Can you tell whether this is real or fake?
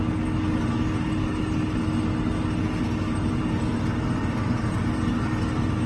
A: real